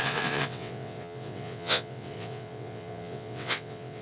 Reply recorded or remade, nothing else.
remade